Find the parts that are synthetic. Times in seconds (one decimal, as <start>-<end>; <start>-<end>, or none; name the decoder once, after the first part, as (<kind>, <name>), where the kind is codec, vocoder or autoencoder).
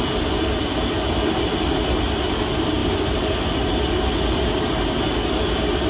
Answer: none